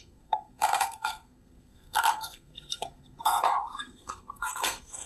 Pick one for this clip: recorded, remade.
remade